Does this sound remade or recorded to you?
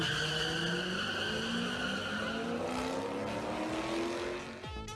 recorded